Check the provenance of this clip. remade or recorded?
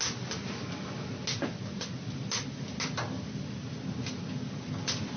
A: recorded